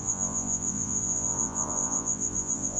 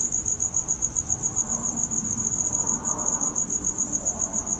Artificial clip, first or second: first